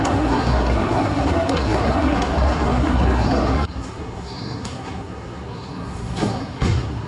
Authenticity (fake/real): fake